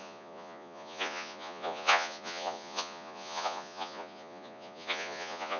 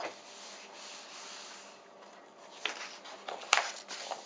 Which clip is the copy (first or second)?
first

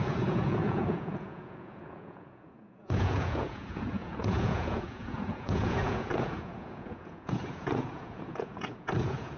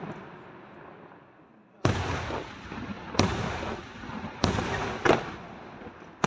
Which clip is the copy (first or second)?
first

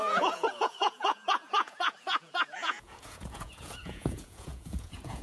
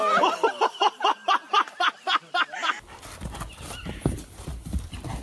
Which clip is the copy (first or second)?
first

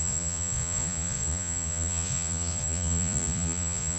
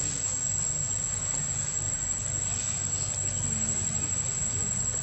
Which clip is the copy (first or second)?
first